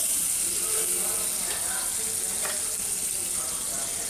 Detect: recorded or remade recorded